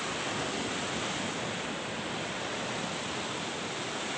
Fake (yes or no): yes